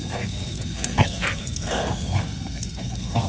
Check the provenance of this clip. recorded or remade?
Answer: remade